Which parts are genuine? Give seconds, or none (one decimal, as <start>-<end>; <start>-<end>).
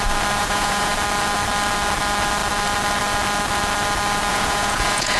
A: 0.0-0.4; 0.9-4.3